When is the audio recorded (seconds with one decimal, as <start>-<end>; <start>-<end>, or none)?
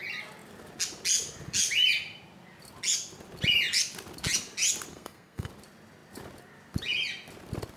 0.0-4.9; 5.5-7.8